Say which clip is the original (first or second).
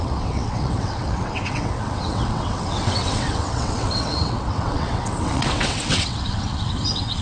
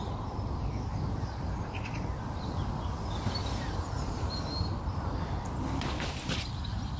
second